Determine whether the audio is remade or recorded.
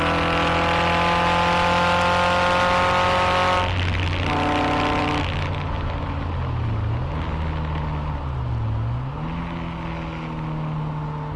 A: recorded